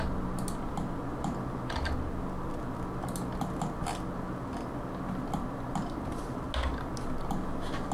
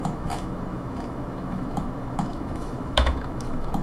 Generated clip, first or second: second